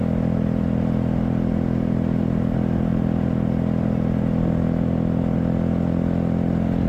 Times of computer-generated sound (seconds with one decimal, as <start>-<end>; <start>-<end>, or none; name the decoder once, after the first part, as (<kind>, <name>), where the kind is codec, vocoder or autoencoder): none